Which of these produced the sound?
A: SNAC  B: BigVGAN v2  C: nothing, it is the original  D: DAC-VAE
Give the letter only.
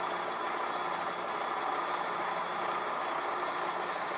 C